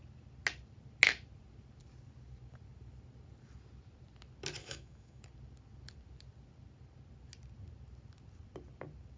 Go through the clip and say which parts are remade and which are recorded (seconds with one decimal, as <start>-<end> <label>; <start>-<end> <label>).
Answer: 0.0-4.6 recorded; 4.6-5.2 remade; 5.2-9.2 recorded